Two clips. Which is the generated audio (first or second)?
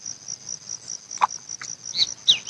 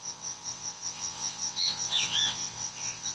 second